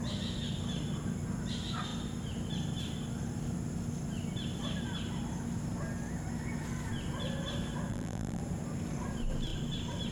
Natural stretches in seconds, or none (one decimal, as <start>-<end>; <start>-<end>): 0.0-7.9; 8.4-10.1